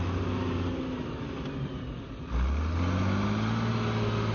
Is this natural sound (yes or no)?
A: yes